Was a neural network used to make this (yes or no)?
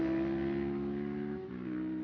no